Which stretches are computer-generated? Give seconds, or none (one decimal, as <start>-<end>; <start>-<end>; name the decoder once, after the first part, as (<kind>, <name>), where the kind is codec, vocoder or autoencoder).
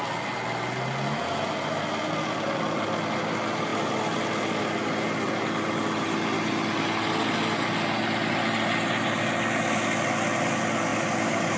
10.9-11.6 (vocoder, BigVGAN v2)